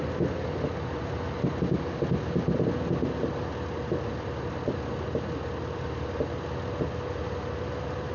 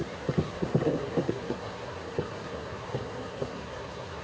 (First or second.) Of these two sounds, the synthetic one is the second